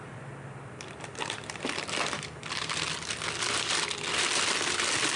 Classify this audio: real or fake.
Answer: fake